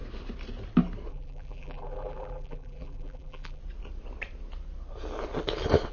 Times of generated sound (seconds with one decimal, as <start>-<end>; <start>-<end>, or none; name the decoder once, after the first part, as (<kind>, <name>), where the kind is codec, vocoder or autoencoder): 1.1-3.6 (vocoder, BigVGAN v2)